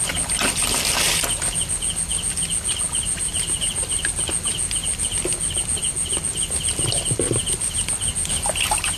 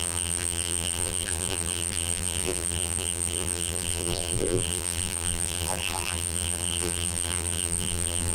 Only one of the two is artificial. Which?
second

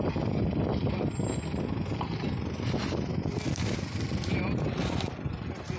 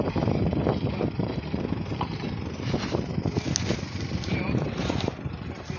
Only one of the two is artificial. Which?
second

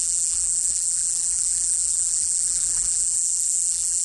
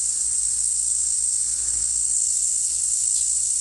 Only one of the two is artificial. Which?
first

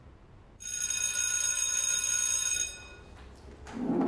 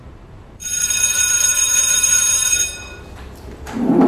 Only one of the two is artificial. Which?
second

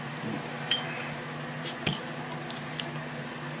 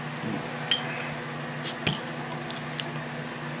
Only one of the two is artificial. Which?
first